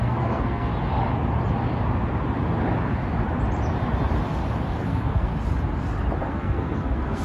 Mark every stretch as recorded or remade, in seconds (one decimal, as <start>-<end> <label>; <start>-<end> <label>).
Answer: 0.0-0.7 remade; 0.7-4.8 recorded; 4.8-5.3 remade; 5.3-6.2 recorded; 6.2-7.2 remade

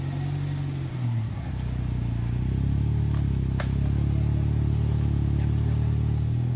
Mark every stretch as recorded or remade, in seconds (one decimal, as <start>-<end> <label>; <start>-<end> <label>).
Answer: 0.0-0.9 recorded; 0.9-1.5 remade; 1.5-6.6 recorded

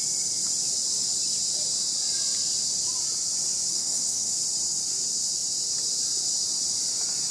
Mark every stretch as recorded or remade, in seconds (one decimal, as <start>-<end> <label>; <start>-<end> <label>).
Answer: 0.0-3.7 recorded; 3.7-4.3 remade; 4.3-7.3 recorded

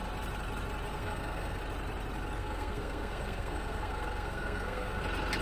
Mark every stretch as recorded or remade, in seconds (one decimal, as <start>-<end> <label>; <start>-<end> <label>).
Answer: 0.0-0.9 recorded; 0.9-1.6 remade; 1.6-2.4 recorded; 2.4-5.0 remade; 5.0-5.4 recorded

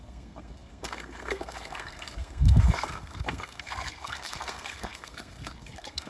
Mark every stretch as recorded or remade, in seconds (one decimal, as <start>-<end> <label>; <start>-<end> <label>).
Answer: 0.0-6.1 remade

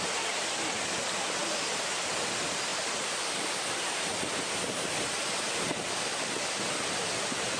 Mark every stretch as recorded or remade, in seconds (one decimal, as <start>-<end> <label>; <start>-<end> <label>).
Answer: 0.0-7.6 recorded

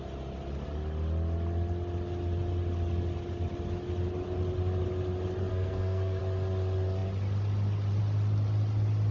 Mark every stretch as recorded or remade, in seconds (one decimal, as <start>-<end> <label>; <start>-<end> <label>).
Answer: 0.0-5.5 recorded; 5.5-6.2 remade; 6.2-9.1 recorded